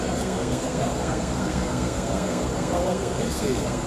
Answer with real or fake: fake